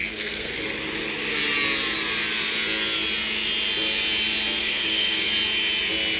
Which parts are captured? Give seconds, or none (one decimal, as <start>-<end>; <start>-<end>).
0.5-4.6; 5.3-6.2